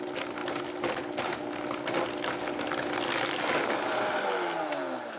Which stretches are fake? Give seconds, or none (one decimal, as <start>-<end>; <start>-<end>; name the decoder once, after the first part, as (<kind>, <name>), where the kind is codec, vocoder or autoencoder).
none